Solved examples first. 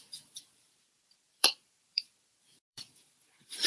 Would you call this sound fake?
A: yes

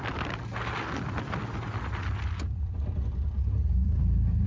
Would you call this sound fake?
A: yes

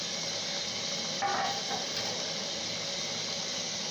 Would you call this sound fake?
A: no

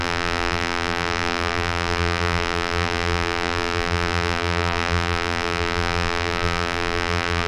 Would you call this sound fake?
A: yes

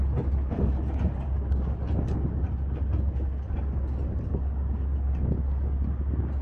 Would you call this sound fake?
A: no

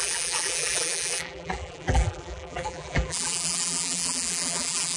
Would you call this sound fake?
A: yes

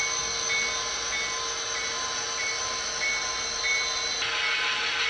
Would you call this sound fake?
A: no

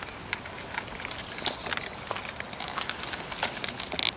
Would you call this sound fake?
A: no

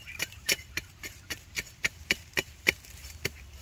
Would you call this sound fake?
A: yes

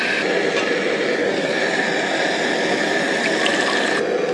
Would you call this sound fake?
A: no